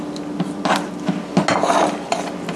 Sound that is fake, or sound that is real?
real